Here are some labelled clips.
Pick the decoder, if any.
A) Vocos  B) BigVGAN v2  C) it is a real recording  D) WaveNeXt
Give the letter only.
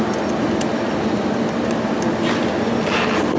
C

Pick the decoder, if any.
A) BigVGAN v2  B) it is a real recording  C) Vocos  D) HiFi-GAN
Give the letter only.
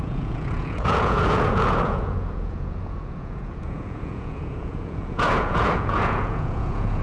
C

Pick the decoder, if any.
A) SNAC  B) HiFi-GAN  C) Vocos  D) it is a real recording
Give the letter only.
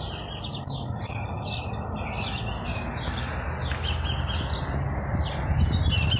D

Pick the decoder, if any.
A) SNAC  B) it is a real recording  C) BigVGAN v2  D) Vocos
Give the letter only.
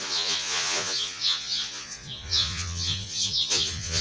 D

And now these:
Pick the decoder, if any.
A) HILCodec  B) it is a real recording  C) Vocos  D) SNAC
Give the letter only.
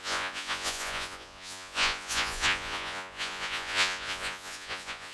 C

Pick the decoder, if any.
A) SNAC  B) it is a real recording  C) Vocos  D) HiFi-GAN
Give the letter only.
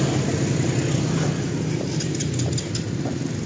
B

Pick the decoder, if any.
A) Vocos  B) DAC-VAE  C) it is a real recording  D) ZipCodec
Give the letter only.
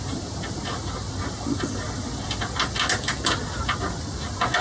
C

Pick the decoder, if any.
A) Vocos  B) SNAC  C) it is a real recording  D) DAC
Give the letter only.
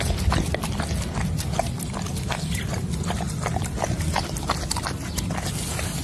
C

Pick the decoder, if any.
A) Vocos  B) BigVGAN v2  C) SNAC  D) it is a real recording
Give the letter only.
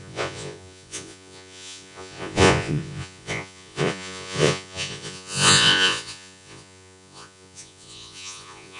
A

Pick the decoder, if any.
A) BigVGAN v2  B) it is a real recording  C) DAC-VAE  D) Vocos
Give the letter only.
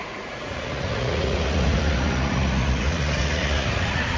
D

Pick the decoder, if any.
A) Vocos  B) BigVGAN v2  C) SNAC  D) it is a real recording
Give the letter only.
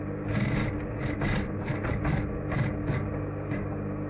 D